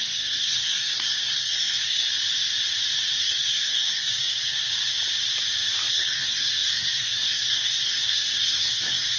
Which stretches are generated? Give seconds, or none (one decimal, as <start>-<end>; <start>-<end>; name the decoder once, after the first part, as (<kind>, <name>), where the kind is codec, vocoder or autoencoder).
0.0-2.1 (codec, SNAC); 3.2-4.7; 5.9-9.2